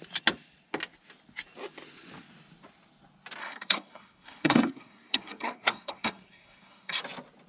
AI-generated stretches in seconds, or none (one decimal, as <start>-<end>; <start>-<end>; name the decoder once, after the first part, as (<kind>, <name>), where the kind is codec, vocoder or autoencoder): 3.4-7.0 (codec, SNAC)